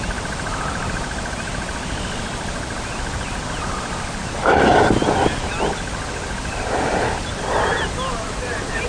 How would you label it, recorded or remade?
recorded